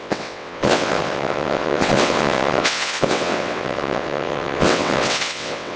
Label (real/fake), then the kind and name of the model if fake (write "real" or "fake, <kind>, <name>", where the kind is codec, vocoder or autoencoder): fake, vocoder, WaveNeXt